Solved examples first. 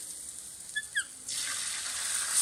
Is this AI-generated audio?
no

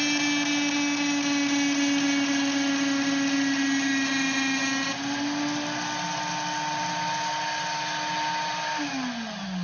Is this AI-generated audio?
no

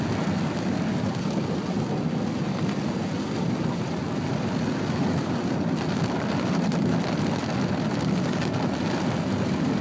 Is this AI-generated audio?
no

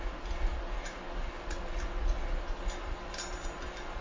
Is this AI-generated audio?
no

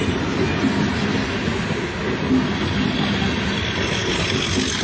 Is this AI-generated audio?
no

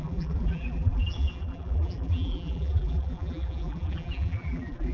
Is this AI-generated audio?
yes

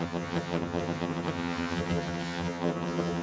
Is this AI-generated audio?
yes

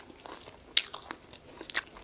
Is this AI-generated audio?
no